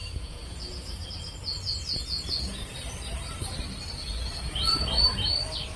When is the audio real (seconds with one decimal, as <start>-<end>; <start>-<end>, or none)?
1.1-5.8